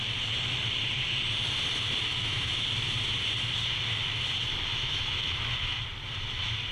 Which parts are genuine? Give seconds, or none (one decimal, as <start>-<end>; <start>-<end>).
0.0-2.1; 2.7-4.7; 5.8-6.7